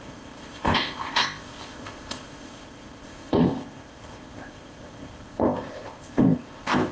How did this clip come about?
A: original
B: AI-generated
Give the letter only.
B